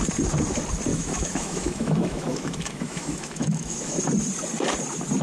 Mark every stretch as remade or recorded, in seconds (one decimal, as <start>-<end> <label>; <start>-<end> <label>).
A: 0.0-0.9 recorded; 0.9-4.0 remade; 4.0-5.2 recorded